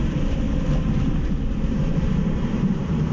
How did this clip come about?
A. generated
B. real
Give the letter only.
B